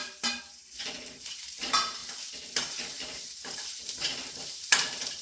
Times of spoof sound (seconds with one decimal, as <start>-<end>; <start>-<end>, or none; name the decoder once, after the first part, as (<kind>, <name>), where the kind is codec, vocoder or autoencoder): 0.0-2.0 (vocoder, BigVGAN v2); 2.6-5.2